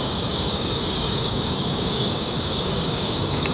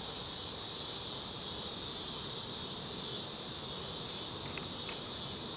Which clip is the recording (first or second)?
second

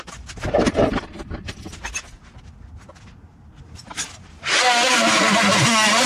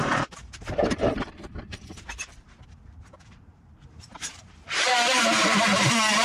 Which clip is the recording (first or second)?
first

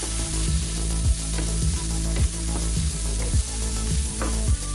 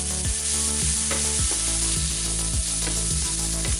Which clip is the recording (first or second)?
second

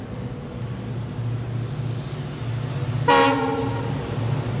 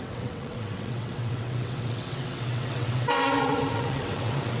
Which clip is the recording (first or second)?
first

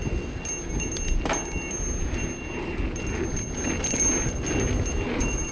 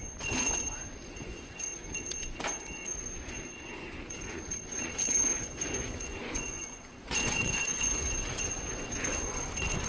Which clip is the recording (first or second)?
first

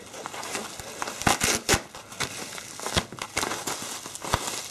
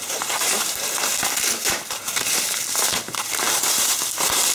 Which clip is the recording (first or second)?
first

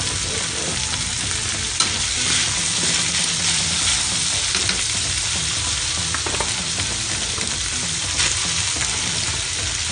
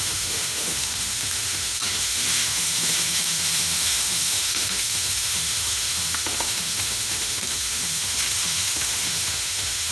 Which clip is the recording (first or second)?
first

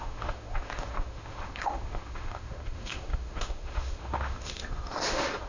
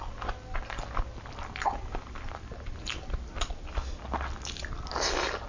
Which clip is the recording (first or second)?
second